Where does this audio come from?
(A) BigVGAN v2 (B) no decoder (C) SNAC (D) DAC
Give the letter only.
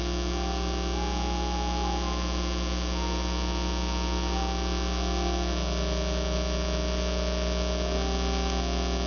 B